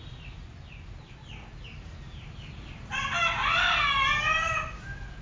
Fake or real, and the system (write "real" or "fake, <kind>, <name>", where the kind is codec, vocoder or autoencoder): real